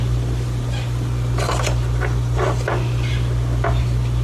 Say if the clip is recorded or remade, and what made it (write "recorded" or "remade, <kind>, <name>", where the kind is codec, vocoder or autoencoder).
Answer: recorded